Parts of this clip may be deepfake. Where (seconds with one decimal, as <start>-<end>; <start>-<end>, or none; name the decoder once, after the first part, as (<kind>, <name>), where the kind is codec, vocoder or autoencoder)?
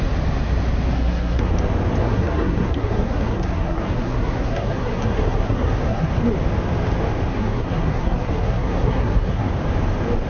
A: 0.9-1.5 (codec, SNAC); 2.0-6.1; 7.3-9.5